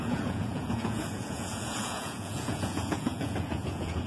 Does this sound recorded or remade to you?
remade